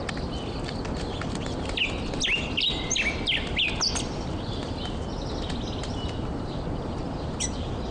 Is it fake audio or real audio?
real